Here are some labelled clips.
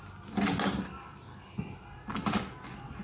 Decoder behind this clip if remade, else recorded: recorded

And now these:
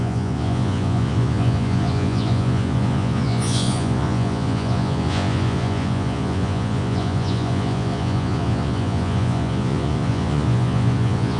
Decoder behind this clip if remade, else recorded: remade, vocoder, Vocos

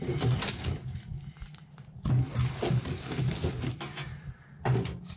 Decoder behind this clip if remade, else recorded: recorded